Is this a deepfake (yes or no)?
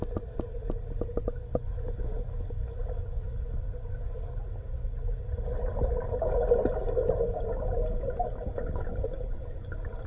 no